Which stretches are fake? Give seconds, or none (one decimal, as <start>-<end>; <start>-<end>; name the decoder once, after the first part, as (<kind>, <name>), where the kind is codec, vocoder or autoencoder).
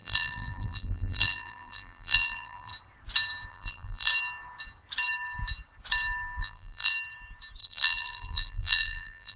0.0-2.7 (vocoder, BigVGAN v2); 3.5-4.1; 6.4-6.9; 7.6-9.4